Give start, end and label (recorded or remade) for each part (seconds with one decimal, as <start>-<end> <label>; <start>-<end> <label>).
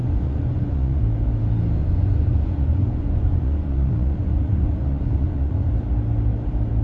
0.0-1.0 remade; 1.0-1.8 recorded; 1.8-5.7 remade; 5.7-6.8 recorded